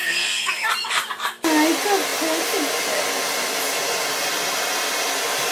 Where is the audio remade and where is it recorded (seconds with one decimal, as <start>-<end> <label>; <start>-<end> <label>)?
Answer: 0.0-0.7 remade; 0.7-5.5 recorded